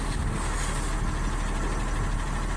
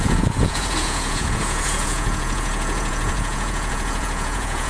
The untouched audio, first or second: first